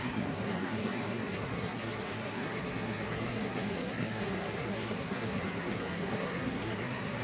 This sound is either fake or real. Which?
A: fake